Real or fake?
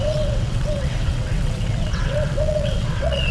fake